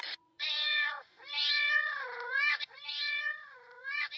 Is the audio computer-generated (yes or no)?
yes